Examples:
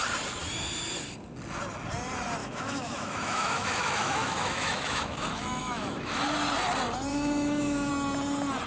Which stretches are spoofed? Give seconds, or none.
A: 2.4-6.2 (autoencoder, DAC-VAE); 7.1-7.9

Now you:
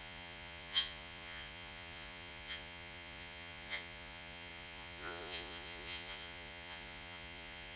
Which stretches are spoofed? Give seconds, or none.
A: 0.0-7.8 (vocoder, Vocos)

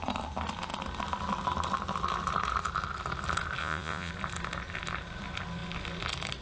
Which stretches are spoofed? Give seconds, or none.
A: 3.6-4.1 (vocoder, Vocos)

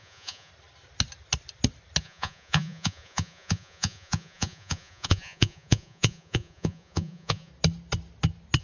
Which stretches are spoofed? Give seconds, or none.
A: 0.0-0.5 (vocoder, Vocos); 2.0-7.5

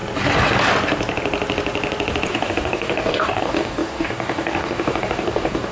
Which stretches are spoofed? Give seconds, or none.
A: 2.3-5.7 (codec, DAC)

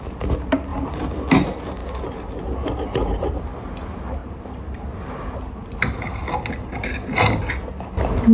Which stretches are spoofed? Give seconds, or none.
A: none

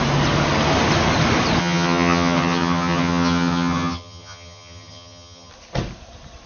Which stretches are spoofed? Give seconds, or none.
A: 1.6-5.5 (vocoder, HiFi-GAN)

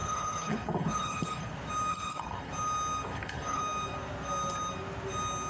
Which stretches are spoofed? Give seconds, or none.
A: 0.0-1.5 (codec, HILCodec); 1.9-2.5; 3.1-3.6